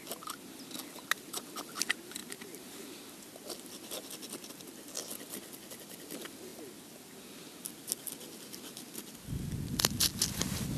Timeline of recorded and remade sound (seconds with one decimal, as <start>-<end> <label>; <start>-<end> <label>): 0.0-10.8 recorded